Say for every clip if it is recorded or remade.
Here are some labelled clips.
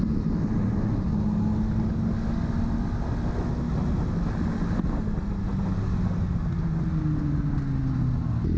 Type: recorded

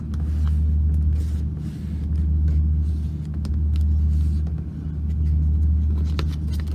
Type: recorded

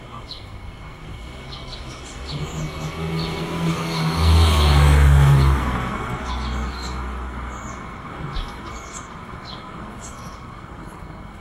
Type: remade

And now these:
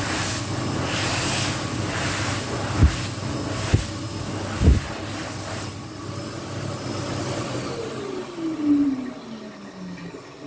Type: recorded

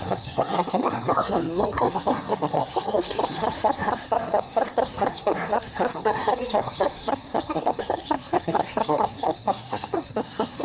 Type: remade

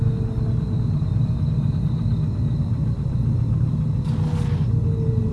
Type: recorded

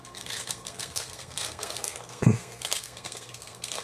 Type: remade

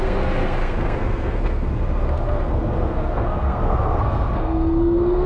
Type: remade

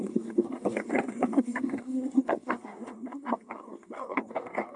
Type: remade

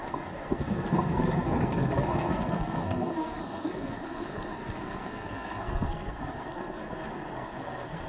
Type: remade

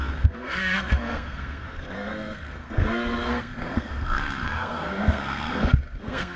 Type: remade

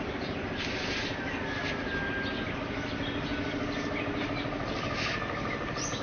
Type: recorded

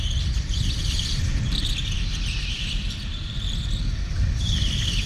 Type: recorded